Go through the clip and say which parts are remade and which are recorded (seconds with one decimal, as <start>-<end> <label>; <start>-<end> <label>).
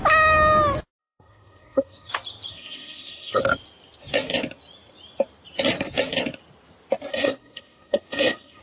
0.0-1.0 recorded; 1.0-2.1 remade; 2.1-2.5 recorded; 2.5-3.4 remade; 3.4-7.1 recorded; 7.1-8.6 remade